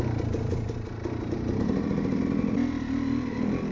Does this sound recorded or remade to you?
recorded